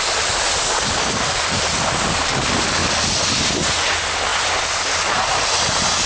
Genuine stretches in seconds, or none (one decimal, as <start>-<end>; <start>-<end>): 0.0-1.0; 1.6-6.1